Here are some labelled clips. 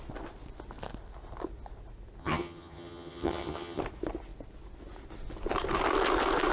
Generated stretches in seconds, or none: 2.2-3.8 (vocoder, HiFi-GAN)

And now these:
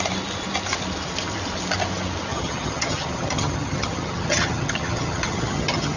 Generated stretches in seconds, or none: 2.3-6.0 (vocoder, HiFi-GAN)

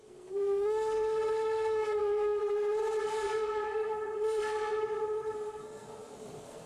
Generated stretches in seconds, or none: 0.0-2.4 (codec, SNAC); 3.0-6.7

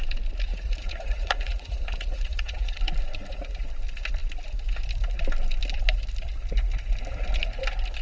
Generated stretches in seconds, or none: 0.5-2.8 (vocoder, Vocos)

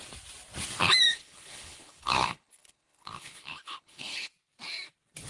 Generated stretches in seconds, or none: 1.1-4.3 (codec, HILCodec)

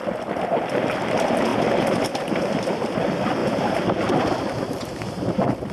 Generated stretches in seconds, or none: none